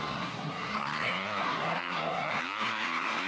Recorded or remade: remade